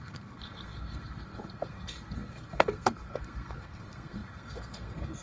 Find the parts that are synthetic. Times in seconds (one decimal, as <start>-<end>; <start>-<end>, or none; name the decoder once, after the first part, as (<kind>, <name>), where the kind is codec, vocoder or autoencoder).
0.0-5.2 (codec, SNAC)